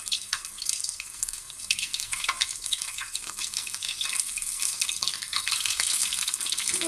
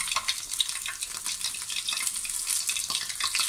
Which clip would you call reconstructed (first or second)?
first